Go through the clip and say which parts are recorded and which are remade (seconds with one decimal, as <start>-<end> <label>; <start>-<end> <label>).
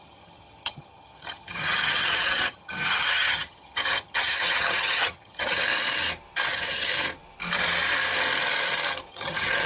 0.0-5.6 remade; 5.6-6.5 recorded; 6.5-6.9 remade; 6.9-9.1 recorded; 9.1-9.7 remade